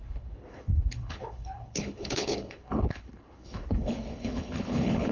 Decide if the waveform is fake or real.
fake